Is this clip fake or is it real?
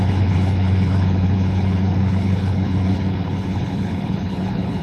fake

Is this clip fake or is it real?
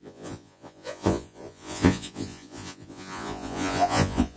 fake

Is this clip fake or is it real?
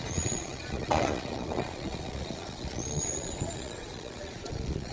fake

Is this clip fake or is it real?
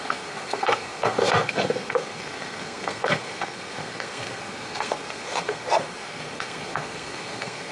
fake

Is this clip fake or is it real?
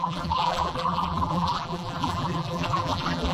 fake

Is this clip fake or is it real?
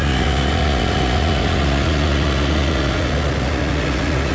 fake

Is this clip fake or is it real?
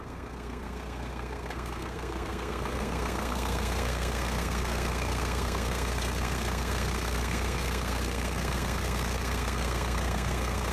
fake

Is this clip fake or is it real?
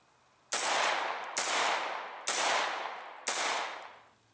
real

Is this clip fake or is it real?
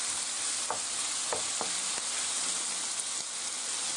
real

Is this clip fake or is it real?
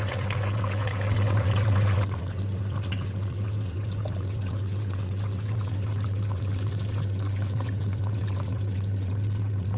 fake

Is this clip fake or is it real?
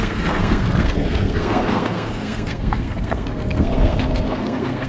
fake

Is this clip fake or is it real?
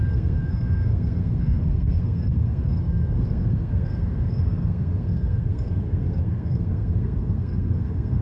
fake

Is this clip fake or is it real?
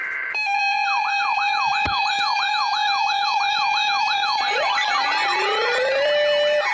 fake